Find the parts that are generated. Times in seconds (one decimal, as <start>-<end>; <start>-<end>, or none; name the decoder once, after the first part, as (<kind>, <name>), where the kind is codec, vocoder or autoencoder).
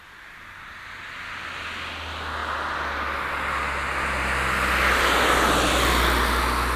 none